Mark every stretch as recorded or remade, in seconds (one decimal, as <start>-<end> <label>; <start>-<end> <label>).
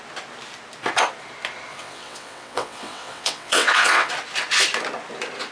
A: 0.0-1.7 recorded; 1.7-4.1 remade; 4.1-5.5 recorded